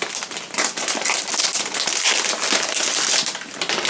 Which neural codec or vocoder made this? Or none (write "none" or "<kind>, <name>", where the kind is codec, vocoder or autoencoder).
none